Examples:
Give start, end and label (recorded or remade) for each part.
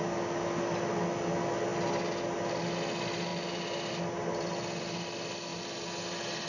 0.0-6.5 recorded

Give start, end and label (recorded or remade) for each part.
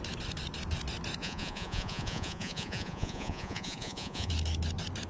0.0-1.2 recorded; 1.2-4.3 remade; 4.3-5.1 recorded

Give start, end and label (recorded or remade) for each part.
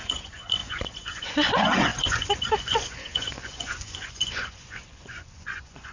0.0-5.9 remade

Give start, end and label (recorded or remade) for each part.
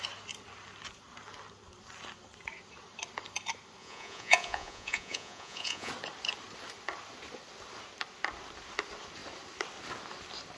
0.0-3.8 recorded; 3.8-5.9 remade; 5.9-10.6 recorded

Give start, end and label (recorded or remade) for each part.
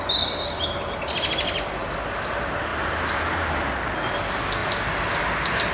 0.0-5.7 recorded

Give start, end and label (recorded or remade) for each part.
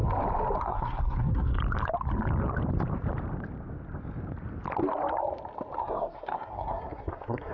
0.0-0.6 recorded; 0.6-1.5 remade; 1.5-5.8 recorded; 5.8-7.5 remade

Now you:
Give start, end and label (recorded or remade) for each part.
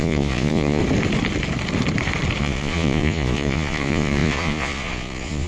0.0-0.8 remade; 0.8-2.4 recorded; 2.4-5.5 remade